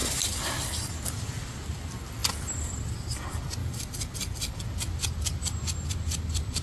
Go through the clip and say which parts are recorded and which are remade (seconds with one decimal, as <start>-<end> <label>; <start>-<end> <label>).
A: 0.0-0.9 remade; 0.9-3.6 recorded; 3.6-4.6 remade; 4.6-6.6 recorded